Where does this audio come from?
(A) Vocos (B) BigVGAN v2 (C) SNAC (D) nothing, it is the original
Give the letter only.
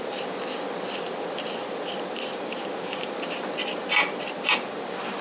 B